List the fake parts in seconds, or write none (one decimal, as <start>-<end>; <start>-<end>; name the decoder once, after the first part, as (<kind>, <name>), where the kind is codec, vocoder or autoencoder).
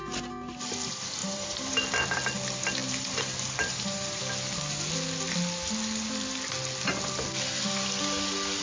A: 1.2-1.7 (vocoder, BigVGAN v2); 2.8-4.2